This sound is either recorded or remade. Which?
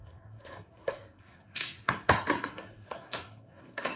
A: remade